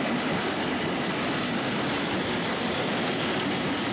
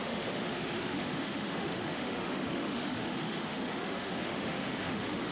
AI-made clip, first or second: second